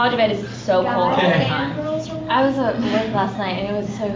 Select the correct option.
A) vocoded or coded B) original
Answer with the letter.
B